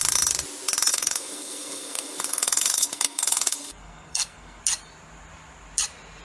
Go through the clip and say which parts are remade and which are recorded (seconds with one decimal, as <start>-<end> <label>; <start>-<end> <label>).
0.0-0.9 recorded; 0.9-4.6 remade; 4.6-6.2 recorded